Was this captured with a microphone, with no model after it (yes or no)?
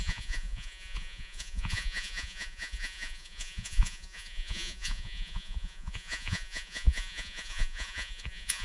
no